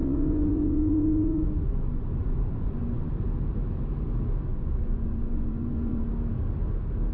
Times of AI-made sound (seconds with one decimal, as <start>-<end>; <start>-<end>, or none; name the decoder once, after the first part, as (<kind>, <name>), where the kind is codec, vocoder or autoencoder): 0.0-3.1 (vocoder, Vocos); 4.5-6.1